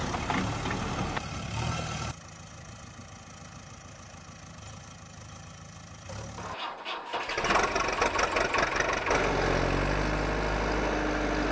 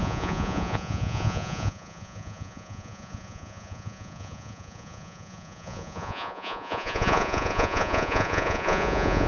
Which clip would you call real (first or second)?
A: first